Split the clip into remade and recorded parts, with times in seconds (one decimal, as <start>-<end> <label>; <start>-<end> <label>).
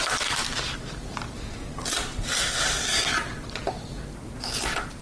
0.0-5.0 recorded